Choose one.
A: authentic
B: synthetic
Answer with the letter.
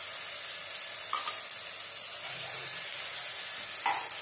A